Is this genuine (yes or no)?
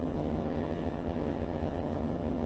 no